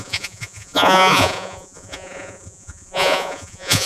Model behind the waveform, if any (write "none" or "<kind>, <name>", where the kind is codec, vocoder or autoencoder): vocoder, Vocos